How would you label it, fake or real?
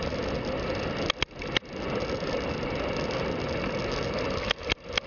real